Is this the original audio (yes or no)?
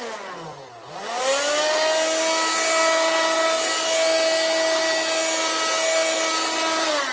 yes